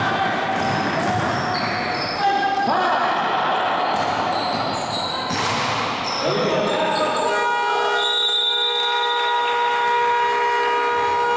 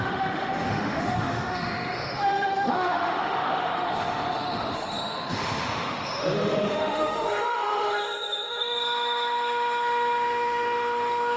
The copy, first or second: second